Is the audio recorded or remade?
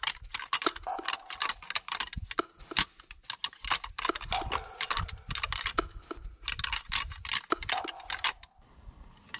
recorded